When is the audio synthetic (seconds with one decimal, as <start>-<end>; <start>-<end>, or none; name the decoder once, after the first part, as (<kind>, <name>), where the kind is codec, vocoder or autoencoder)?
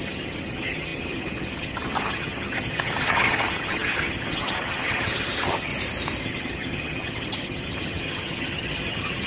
0.0-5.7 (vocoder, HiFi-GAN); 6.2-9.3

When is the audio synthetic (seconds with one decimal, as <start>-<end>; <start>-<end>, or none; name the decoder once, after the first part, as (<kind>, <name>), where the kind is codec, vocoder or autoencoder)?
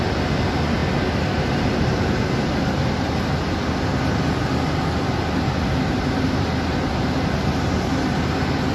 none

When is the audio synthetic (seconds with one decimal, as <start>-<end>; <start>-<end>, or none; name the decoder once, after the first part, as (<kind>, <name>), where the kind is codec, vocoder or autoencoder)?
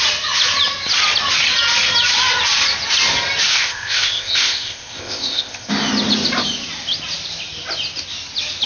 3.5-5.7 (codec, ZipCodec)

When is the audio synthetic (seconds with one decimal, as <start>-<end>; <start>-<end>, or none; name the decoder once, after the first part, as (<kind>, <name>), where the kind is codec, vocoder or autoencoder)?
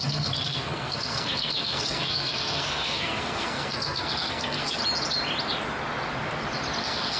0.0-4.8 (codec, SNAC); 6.8-7.2